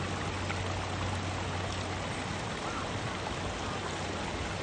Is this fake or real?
real